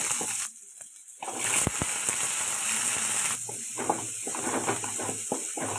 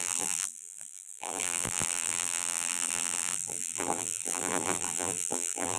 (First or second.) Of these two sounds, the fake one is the second